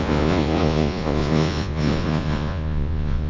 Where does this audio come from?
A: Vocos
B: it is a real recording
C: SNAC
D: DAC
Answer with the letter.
A